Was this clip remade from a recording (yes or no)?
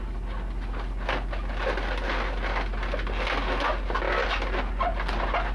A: no